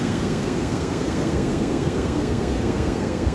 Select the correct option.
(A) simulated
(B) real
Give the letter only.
A